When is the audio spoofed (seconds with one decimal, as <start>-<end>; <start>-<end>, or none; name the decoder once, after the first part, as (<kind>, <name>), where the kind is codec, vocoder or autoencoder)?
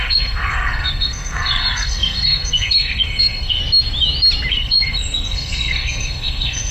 0.0-3.6 (codec, SNAC); 4.5-6.7